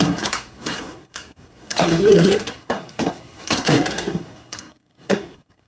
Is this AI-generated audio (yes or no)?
yes